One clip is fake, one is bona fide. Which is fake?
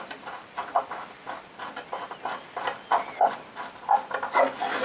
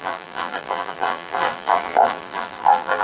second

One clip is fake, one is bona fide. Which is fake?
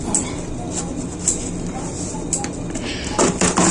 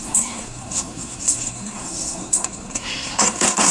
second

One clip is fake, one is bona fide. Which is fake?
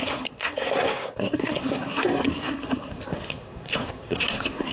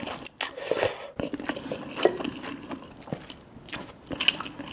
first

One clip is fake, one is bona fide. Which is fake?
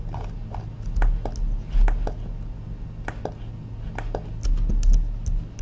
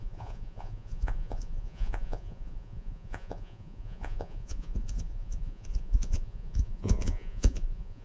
second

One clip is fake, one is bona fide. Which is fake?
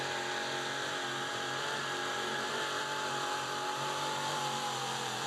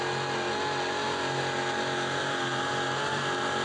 first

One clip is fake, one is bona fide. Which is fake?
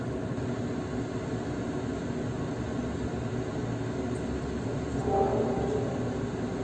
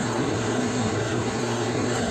second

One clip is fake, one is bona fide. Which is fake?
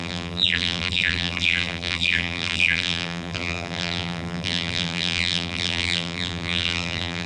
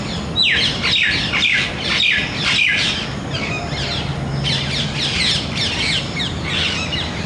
first